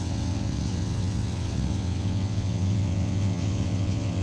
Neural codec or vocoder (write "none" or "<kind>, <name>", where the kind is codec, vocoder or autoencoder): vocoder, WaveNeXt